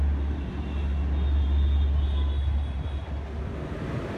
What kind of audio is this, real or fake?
real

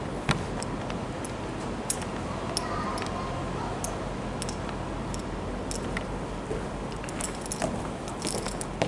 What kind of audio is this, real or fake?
real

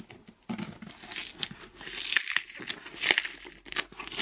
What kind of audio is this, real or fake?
real